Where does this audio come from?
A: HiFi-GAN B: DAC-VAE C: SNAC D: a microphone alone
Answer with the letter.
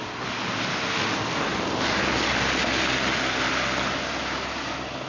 D